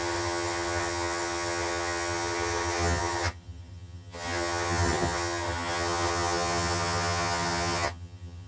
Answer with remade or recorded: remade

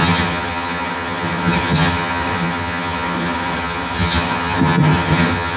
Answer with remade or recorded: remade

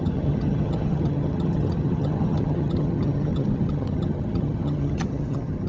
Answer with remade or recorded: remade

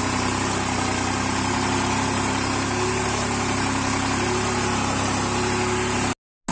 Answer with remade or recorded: recorded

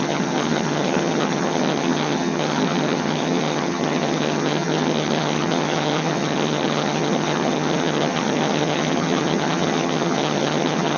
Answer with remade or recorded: remade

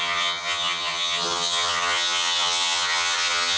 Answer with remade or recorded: remade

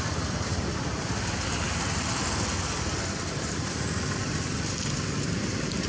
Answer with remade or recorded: recorded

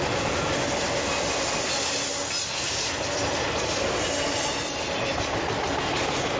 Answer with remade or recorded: recorded